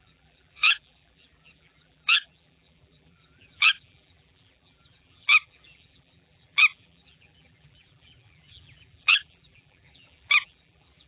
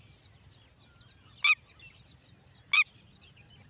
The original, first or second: second